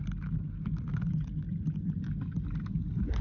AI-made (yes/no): no